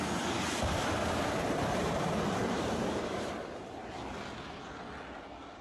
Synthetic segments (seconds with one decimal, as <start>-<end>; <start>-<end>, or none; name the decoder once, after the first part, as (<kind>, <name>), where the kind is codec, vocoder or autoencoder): 1.0-3.8 (vocoder, BigVGAN v2)